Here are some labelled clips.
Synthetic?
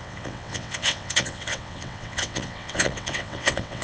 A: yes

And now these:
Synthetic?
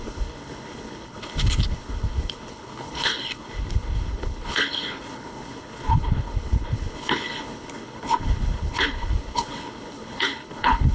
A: yes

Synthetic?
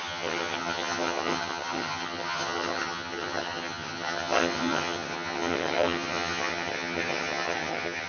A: yes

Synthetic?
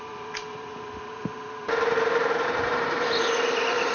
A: yes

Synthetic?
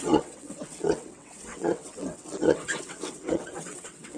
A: yes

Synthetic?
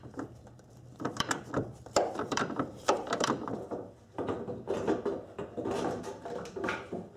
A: yes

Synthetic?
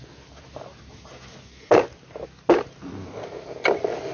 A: no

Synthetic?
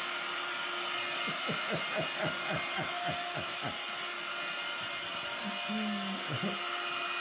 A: no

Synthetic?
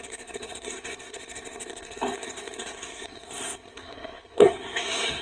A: yes